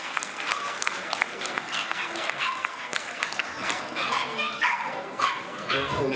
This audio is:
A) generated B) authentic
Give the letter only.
A